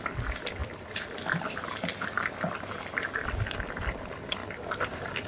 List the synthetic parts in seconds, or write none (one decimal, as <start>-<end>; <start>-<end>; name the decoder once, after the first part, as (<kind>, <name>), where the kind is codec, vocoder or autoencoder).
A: 0.0-5.3 (vocoder, BigVGAN v2)